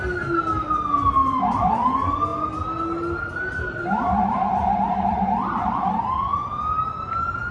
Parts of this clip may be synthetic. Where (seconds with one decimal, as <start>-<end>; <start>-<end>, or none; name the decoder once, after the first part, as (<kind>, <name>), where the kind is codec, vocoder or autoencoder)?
1.2-1.7 (vocoder, BigVGAN v2)